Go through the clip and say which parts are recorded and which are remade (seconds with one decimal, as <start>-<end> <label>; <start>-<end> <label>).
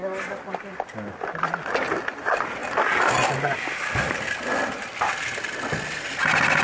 0.0-6.6 recorded